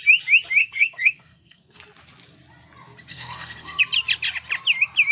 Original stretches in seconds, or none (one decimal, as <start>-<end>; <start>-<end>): 0.0-0.6; 1.8-3.1; 3.8-5.1